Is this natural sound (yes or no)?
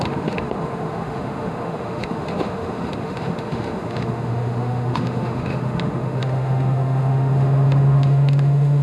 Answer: no